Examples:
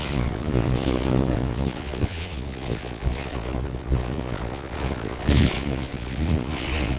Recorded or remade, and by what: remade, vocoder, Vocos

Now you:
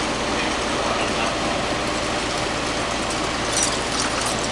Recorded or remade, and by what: recorded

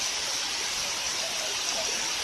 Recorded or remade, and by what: recorded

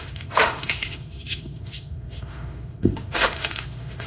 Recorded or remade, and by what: remade, autoencoder, DAC-VAE